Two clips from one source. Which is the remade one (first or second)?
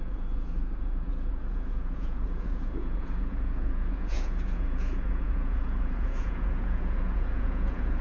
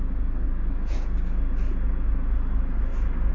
first